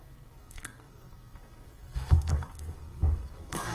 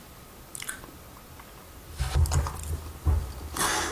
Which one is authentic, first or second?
second